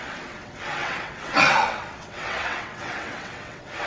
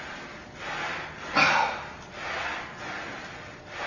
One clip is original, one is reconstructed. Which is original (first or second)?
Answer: second